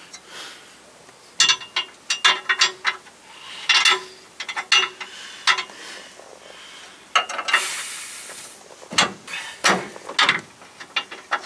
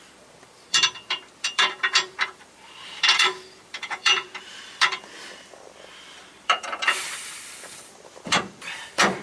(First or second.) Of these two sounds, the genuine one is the first